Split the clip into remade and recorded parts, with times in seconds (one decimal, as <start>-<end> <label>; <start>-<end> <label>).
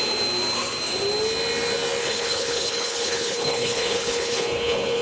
0.0-2.0 recorded; 2.0-5.0 remade